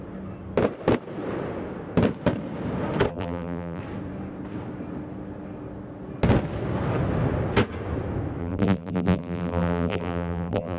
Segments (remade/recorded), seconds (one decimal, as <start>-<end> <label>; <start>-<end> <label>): 0.0-3.1 recorded; 3.1-3.8 remade; 3.8-8.4 recorded; 8.4-10.8 remade